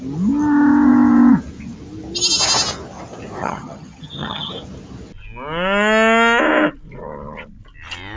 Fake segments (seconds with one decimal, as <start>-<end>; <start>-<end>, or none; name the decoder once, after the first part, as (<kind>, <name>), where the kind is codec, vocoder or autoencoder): 3.4-4.5 (vocoder, HiFi-GAN)